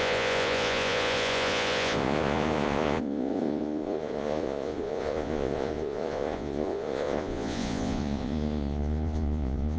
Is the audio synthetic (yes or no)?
yes